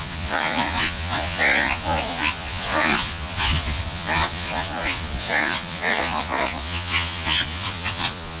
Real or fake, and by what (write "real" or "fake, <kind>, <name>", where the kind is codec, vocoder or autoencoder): fake, vocoder, Vocos